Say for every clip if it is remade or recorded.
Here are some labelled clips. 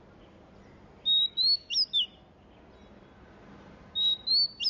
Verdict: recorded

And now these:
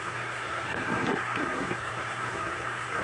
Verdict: remade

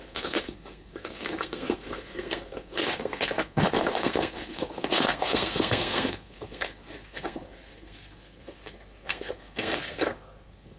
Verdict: remade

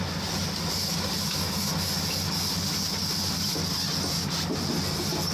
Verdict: recorded